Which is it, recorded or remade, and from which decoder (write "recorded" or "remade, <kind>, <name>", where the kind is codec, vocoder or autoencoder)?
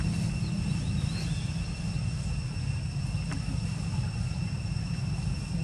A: recorded